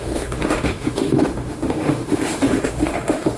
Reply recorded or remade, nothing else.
remade